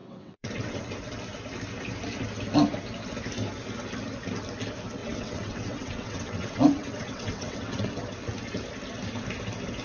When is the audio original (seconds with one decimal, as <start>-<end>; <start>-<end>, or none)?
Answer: 0.8-5.0; 7.9-9.8